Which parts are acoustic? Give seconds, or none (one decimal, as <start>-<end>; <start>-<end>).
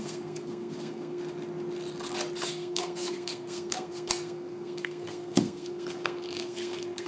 1.2-2.5